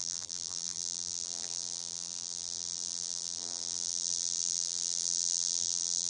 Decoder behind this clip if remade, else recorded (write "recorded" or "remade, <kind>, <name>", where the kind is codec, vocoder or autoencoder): remade, vocoder, BigVGAN v2